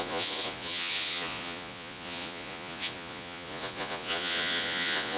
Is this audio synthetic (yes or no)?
yes